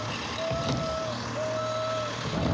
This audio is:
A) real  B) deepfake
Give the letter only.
A